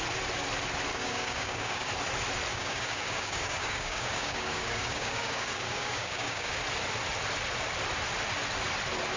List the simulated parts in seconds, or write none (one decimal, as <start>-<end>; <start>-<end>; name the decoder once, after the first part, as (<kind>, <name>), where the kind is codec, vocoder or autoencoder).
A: 0.9-1.9 (codec, DAC); 2.5-6.6